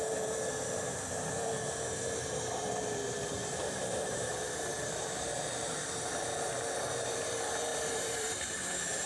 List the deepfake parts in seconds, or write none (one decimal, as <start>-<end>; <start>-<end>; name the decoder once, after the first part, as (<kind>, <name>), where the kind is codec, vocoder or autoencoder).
3.4-4.3 (vocoder, BigVGAN v2); 7.7-9.1